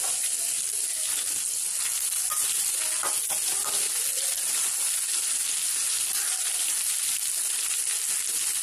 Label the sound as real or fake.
real